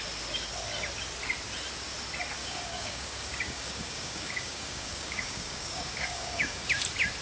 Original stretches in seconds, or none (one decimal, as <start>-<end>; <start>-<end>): 0.0-2.4; 6.7-7.2